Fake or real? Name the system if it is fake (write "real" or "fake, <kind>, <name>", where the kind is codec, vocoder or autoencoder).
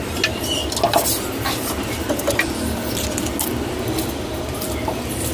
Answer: real